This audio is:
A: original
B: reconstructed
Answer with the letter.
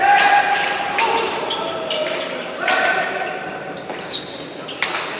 A